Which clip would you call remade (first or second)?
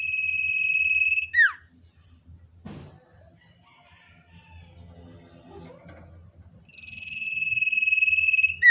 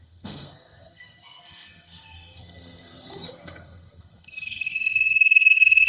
second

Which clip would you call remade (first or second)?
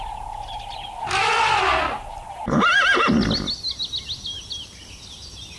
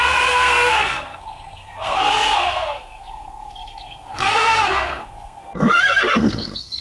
second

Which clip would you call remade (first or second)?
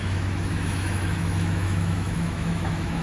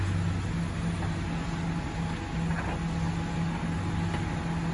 first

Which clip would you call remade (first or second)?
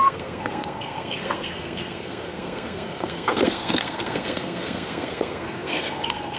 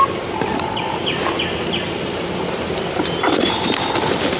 first